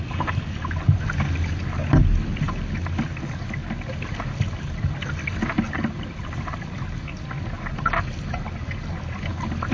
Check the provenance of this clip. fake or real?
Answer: real